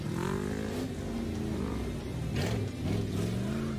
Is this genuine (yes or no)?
yes